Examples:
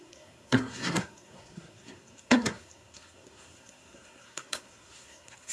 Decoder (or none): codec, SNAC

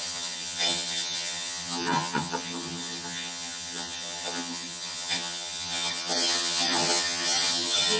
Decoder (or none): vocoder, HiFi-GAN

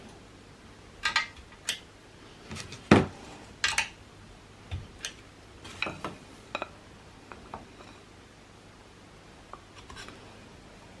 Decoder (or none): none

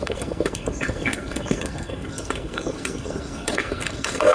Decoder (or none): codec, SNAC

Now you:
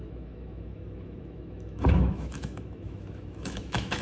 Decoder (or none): autoencoder, DAC-VAE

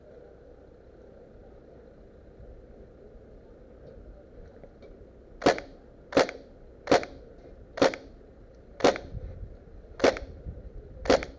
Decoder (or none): none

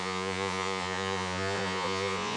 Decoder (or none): vocoder, Vocos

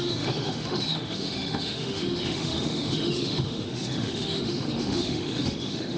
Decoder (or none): autoencoder, DAC-VAE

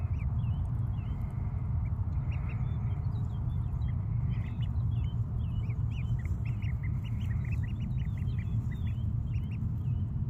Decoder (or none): none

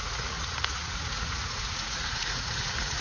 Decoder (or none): vocoder, Vocos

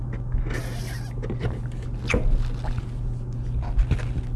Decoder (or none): none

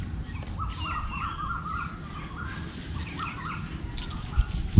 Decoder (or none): none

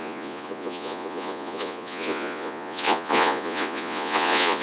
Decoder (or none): vocoder, Vocos